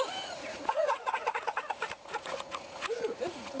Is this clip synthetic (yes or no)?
yes